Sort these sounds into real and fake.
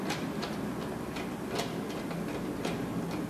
real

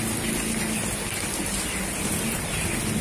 real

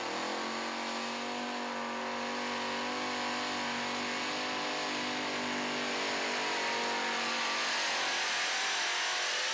real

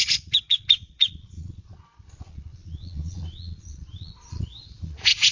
fake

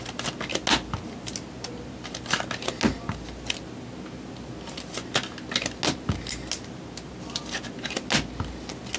real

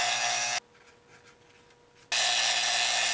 real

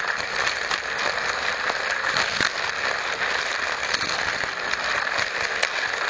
fake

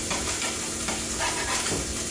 fake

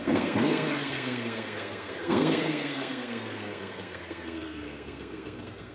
fake